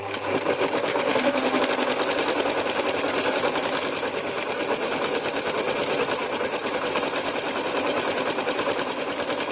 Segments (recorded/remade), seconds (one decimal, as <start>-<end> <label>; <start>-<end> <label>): 0.0-0.9 recorded; 0.9-1.6 remade; 1.6-9.5 recorded